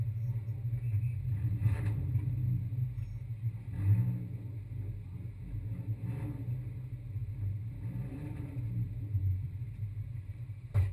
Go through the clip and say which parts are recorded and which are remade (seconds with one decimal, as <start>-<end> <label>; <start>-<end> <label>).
0.0-1.6 recorded; 1.6-2.3 remade; 2.3-7.2 recorded; 7.2-10.9 remade